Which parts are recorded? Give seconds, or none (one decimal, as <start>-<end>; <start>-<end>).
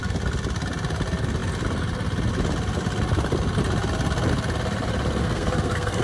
0.0-5.2